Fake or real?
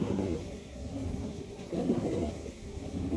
fake